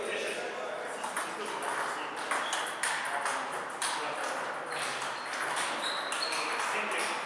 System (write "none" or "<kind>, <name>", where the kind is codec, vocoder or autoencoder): none